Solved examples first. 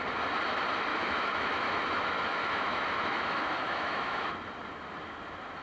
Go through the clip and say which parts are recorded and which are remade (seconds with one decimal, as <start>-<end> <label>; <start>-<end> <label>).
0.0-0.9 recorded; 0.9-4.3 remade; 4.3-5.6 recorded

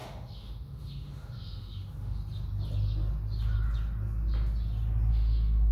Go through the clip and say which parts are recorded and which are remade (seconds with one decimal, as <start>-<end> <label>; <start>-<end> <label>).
0.0-2.2 remade; 2.2-5.1 recorded; 5.1-5.7 remade

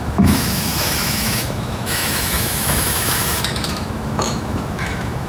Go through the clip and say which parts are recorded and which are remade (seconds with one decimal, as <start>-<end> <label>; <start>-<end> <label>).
0.0-5.3 remade

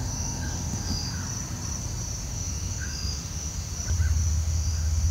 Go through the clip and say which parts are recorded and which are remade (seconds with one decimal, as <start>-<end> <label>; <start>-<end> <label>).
0.0-1.2 remade; 1.2-2.3 recorded; 2.3-3.7 remade; 3.7-4.3 recorded; 4.3-5.1 remade

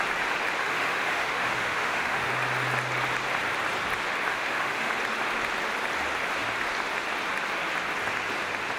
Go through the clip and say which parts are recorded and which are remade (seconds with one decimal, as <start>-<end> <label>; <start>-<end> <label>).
0.0-0.6 recorded; 0.6-2.3 remade; 2.3-4.3 recorded; 4.3-4.9 remade; 4.9-8.8 recorded

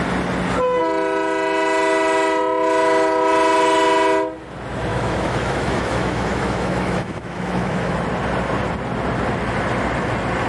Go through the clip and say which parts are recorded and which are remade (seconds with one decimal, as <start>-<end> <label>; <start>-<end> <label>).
0.0-4.9 recorded; 4.9-8.0 remade; 8.0-10.5 recorded